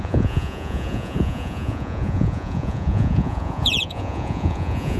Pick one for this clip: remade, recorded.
remade